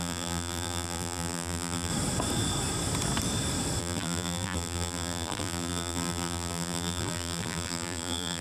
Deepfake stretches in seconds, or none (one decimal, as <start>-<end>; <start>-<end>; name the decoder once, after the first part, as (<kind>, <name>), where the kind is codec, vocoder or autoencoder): 0.0-1.9 (vocoder, BigVGAN v2); 3.8-8.4